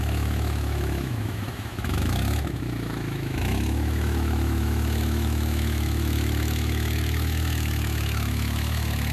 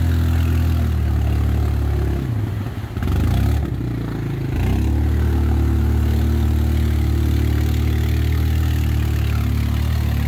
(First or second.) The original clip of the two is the second